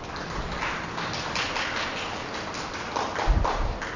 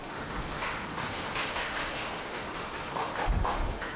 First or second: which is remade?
second